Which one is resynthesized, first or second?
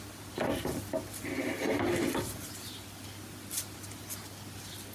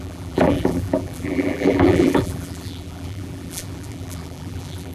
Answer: second